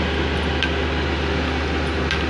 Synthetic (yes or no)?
no